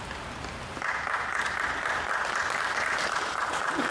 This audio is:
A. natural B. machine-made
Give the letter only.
B